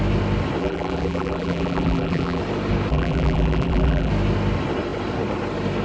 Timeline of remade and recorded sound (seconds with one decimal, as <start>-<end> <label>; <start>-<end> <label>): 0.0-0.6 recorded; 0.6-2.4 remade; 2.4-2.9 recorded; 2.9-4.1 remade; 4.1-5.8 recorded